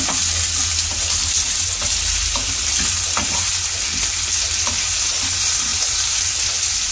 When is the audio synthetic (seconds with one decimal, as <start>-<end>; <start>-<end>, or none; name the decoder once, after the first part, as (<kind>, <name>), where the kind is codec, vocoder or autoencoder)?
0.9-1.6 (vocoder, BigVGAN v2); 5.7-6.9